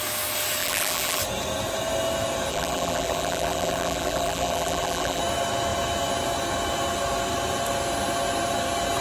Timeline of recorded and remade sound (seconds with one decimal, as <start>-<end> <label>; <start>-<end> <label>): 0.0-0.6 recorded; 0.6-1.2 remade; 1.2-2.5 recorded; 2.5-5.2 remade; 5.2-9.0 recorded